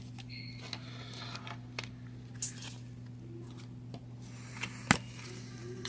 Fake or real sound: real